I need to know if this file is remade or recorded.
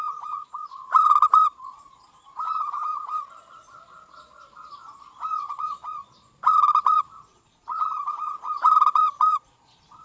remade